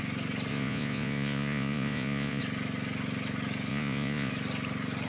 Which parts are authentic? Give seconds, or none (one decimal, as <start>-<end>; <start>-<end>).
0.0-0.5; 2.4-3.7; 4.3-5.1